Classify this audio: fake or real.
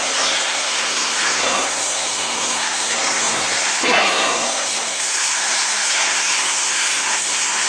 fake